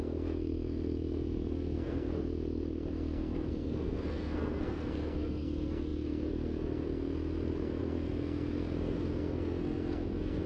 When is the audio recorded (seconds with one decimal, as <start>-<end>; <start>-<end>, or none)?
none

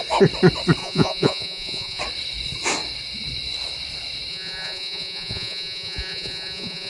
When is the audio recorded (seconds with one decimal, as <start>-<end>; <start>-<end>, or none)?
0.0-0.8; 2.0-4.3

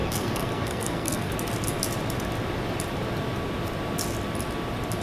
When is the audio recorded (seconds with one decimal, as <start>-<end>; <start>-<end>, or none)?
1.3-5.0

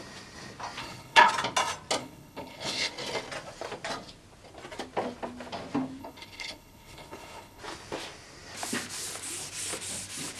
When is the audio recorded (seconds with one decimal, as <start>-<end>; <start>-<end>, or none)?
0.0-0.8; 1.3-2.0; 2.9-6.0; 7.6-10.4